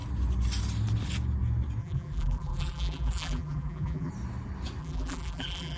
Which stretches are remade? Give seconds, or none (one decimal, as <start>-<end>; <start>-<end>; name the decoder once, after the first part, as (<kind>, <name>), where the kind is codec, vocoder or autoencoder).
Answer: 1.8-4.1 (vocoder, BigVGAN v2); 4.8-5.8